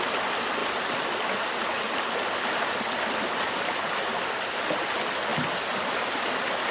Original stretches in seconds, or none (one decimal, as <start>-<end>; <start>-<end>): 0.0-6.7